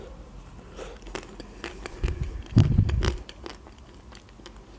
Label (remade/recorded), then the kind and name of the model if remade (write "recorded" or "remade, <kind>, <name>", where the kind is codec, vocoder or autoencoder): recorded